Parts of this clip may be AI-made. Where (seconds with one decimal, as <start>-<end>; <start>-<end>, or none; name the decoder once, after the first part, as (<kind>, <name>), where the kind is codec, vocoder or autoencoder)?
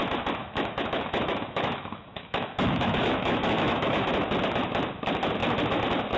0.4-4.1 (autoencoder, DAC-VAE)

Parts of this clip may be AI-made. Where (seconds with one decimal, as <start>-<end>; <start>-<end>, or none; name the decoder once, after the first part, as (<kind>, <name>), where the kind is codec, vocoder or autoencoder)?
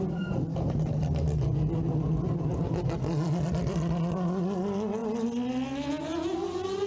none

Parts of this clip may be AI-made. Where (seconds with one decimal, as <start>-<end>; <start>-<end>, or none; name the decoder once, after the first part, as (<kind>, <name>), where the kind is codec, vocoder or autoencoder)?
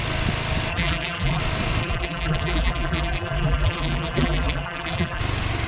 0.7-1.4 (vocoder, BigVGAN v2); 1.8-5.2